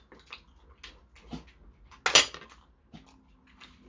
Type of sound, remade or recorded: recorded